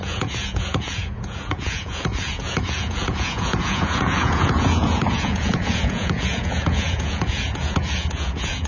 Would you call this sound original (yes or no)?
no